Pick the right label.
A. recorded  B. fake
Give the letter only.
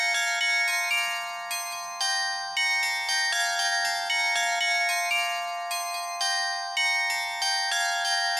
A